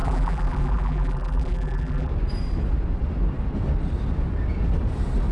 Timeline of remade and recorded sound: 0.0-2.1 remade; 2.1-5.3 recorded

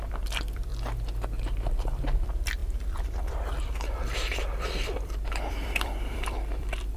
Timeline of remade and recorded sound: 0.0-0.7 remade; 0.7-1.4 recorded; 1.4-7.0 remade

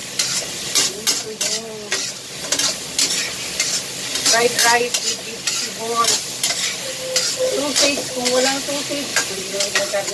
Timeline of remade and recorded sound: 0.0-0.9 remade; 0.9-9.1 recorded; 9.1-10.1 remade

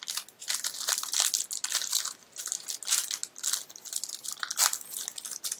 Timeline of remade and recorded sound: 0.0-5.6 recorded

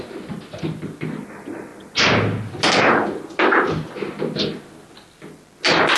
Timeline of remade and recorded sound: 0.0-6.0 recorded

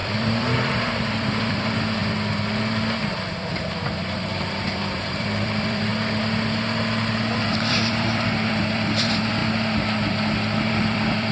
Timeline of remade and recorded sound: 0.0-5.9 remade; 5.9-7.4 recorded; 7.4-9.4 remade; 9.4-10.7 recorded; 10.7-11.3 remade